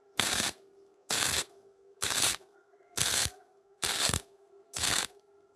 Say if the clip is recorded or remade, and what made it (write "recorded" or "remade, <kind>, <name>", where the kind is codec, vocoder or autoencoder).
remade, codec, SNAC